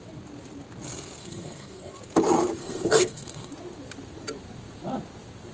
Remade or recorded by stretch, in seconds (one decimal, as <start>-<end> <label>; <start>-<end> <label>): 0.0-1.2 recorded; 1.2-1.9 remade; 1.9-2.6 recorded; 2.6-3.5 remade; 3.5-5.5 recorded